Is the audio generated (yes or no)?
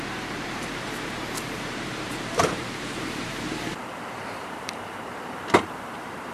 yes